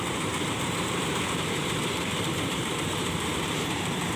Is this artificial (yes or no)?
yes